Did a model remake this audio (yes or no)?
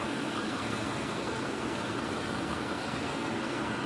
yes